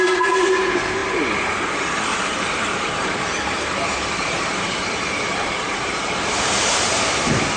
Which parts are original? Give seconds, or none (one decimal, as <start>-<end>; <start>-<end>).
0.0-2.1; 6.7-7.6

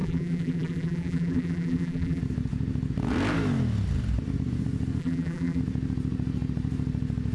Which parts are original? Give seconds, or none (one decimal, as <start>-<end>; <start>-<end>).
2.2-5.0; 5.6-7.3

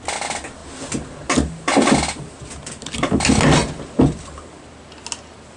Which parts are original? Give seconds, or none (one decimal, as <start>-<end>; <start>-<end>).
0.0-5.6

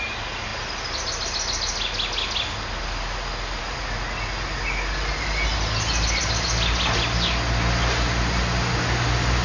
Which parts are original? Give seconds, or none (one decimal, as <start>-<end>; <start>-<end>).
0.0-9.4

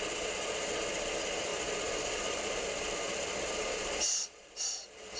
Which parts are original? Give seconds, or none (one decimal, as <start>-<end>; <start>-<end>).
0.0-1.5; 4.6-5.2